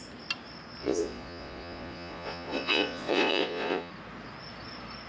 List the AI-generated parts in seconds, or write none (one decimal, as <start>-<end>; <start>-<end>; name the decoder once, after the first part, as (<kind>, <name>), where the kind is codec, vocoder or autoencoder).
0.8-3.9 (vocoder, Vocos)

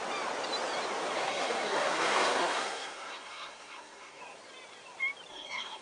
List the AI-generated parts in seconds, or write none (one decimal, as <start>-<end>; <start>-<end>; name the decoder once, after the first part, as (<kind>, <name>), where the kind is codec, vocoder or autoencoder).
1.2-4.2 (codec, SNAC); 5.3-5.8

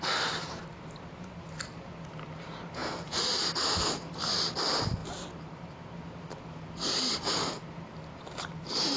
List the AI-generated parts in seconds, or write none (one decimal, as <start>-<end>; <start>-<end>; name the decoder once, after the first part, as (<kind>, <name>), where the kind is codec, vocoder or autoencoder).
0.0-9.0 (vocoder, BigVGAN v2)